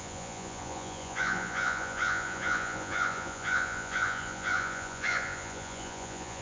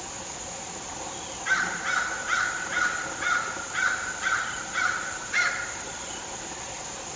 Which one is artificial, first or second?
first